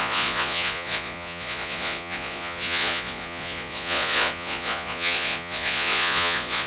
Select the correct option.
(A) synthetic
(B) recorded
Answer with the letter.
A